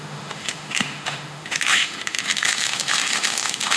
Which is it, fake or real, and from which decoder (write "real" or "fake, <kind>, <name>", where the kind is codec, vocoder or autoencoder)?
fake, autoencoder, DAC-VAE